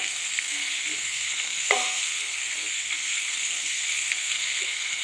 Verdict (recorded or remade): remade